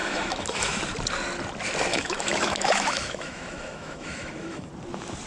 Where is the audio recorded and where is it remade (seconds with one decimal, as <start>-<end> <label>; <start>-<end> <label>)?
0.0-0.8 remade; 0.8-1.9 recorded; 1.9-4.7 remade; 4.7-5.3 recorded